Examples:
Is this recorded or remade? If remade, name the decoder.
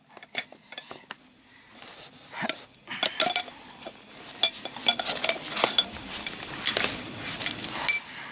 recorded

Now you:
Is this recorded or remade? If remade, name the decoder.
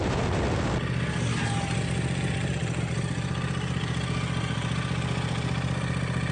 recorded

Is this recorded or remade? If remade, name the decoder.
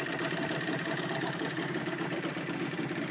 recorded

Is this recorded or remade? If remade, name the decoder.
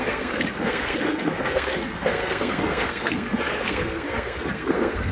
remade, codec, SNAC